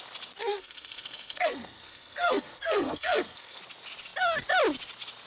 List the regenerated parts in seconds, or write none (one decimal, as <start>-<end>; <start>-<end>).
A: 0.4-3.6